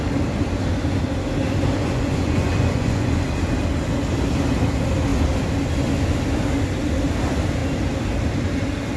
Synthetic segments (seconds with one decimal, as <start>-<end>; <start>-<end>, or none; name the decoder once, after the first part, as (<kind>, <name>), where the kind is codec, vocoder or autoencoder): 1.8-3.2 (vocoder, Vocos)